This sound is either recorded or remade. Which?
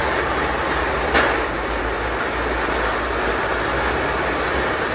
recorded